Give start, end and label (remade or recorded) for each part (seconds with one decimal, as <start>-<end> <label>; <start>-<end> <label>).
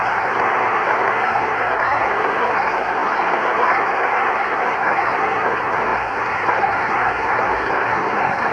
0.0-8.5 remade